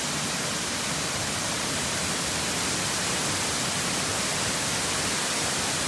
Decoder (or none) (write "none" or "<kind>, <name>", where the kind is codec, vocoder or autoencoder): none